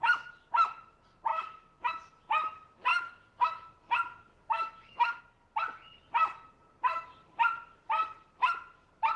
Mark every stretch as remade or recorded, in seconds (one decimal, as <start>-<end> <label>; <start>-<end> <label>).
0.0-1.3 recorded; 1.3-1.9 remade; 1.9-2.9 recorded; 2.9-3.7 remade; 3.7-4.3 recorded; 4.3-5.2 remade; 5.2-9.2 recorded